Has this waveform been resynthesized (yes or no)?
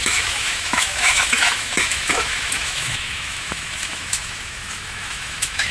yes